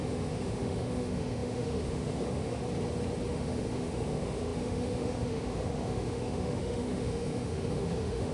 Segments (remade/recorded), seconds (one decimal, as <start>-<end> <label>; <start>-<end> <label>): 0.0-2.6 remade; 2.6-3.3 recorded; 3.3-8.3 remade